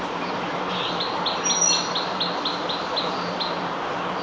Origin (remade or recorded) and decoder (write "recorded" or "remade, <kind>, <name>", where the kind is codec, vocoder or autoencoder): recorded